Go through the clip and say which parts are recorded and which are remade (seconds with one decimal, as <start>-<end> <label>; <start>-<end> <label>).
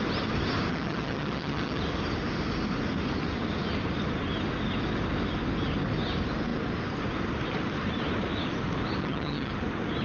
0.0-0.7 recorded; 0.7-1.8 remade; 1.8-9.0 recorded; 9.0-9.5 remade; 9.5-10.0 recorded